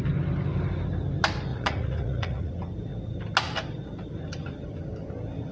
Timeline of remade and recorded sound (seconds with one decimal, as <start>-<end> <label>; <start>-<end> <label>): 0.0-1.5 recorded; 1.5-2.5 remade; 2.5-5.5 recorded